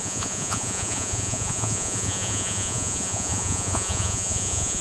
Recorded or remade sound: remade